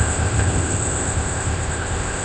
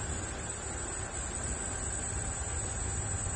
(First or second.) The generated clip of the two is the first